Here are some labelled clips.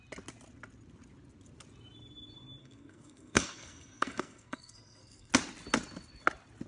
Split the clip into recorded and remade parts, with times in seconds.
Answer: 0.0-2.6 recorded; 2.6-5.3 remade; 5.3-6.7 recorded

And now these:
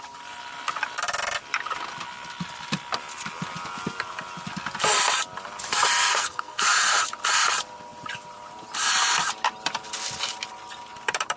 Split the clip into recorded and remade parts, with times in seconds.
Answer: 0.0-6.1 recorded; 6.1-6.6 remade; 6.6-11.4 recorded

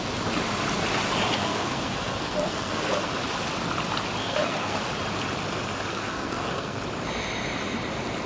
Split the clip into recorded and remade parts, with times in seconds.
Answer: 0.0-1.4 recorded; 1.4-3.1 remade; 3.1-4.2 recorded; 4.2-4.8 remade; 4.8-5.9 recorded; 5.9-6.8 remade; 6.8-8.3 recorded

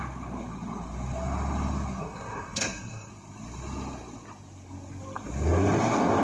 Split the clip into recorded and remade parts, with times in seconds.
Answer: 0.0-2.0 recorded; 2.0-3.1 remade; 3.1-6.2 recorded

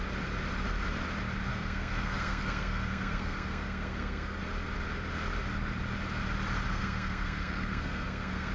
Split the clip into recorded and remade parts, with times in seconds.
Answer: 0.0-1.5 recorded; 1.5-4.4 remade; 4.4-6.7 recorded; 6.7-8.5 remade

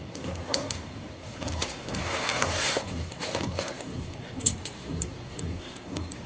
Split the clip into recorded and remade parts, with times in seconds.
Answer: 0.0-6.3 remade

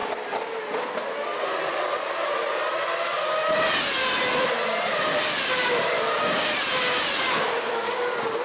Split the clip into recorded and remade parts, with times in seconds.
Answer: 0.0-8.4 recorded

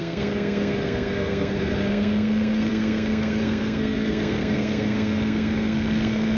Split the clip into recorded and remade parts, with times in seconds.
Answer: 0.0-6.4 remade